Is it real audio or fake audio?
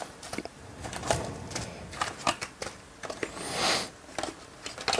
real